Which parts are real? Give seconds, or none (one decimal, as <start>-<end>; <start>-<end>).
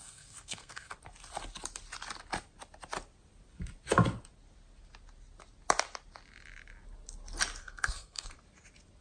0.9-7.6; 8.3-9.0